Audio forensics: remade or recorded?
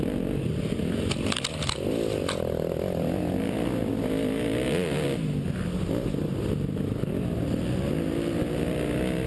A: recorded